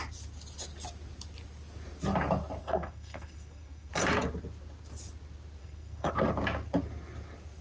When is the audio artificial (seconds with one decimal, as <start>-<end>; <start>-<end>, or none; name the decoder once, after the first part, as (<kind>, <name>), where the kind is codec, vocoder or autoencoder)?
2.6-3.9 (codec, SNAC); 5.6-6.1